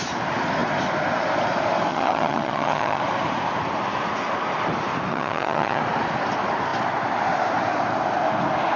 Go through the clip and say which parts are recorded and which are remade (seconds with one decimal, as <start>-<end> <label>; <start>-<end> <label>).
0.0-1.9 recorded; 1.9-3.0 remade; 3.0-5.1 recorded; 5.1-5.8 remade; 5.8-8.8 recorded